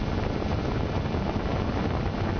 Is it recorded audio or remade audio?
recorded